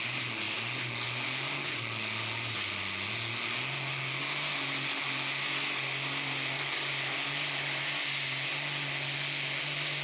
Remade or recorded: recorded